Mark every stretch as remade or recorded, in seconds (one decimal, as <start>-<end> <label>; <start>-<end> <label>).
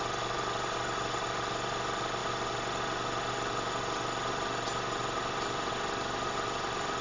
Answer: 0.0-7.0 recorded